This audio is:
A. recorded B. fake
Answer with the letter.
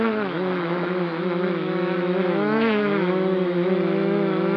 B